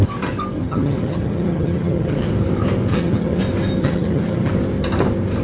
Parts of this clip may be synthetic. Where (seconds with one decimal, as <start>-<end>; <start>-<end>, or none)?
0.6-2.3; 2.9-3.4; 3.8-4.5

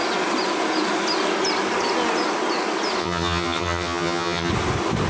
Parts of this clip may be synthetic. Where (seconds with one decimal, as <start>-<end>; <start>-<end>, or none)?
3.0-4.5

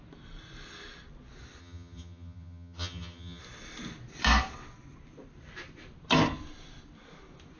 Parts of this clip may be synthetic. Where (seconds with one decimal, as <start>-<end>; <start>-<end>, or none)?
1.6-3.4

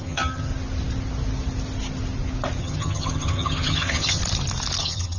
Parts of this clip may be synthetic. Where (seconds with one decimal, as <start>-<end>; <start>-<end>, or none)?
0.0-0.5; 2.6-4.2; 4.8-5.2

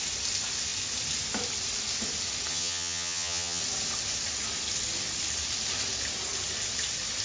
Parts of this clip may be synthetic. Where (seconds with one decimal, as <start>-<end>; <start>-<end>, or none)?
2.5-3.6

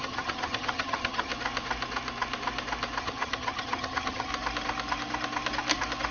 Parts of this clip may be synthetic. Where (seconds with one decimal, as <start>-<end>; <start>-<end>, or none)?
0.0-1.3; 3.0-4.3

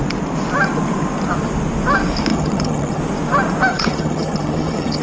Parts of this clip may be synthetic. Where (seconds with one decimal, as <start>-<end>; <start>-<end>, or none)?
2.3-3.0; 3.7-5.0